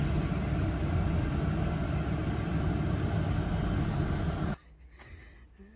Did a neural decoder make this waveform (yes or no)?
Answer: no